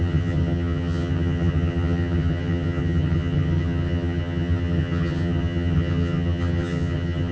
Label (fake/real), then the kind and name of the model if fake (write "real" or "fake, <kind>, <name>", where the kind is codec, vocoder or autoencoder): fake, vocoder, HiFi-GAN